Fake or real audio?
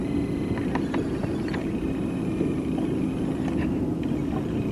real